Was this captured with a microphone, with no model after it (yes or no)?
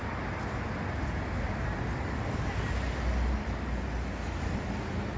yes